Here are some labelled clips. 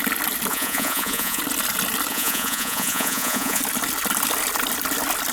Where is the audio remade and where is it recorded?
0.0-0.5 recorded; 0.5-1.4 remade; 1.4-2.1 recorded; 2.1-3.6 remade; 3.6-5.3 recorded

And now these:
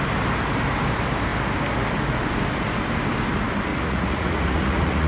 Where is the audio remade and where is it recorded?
0.0-3.7 recorded; 3.7-5.1 remade

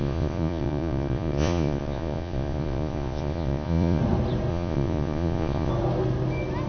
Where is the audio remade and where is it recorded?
0.0-4.0 remade; 4.0-4.5 recorded; 4.5-5.7 remade; 5.7-6.7 recorded

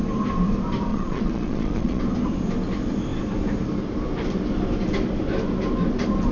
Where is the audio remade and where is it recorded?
0.0-0.9 recorded; 0.9-2.0 remade; 2.0-6.3 recorded

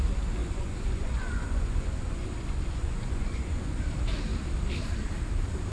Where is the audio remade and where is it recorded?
0.0-0.4 recorded; 0.4-3.8 remade; 3.8-5.7 recorded

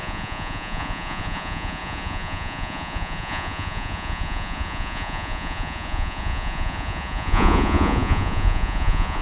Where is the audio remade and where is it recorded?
0.0-9.2 remade

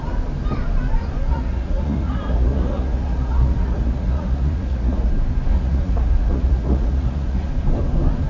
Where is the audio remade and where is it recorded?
0.0-1.3 recorded; 1.3-5.1 remade; 5.1-5.5 recorded; 5.5-7.5 remade; 7.5-8.3 recorded